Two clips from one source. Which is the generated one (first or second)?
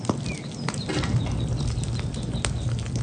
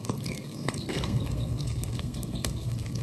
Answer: second